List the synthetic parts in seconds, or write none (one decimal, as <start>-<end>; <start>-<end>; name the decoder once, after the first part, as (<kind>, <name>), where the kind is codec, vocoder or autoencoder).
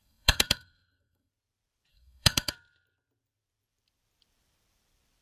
0.0-1.3 (codec, SNAC); 1.9-2.5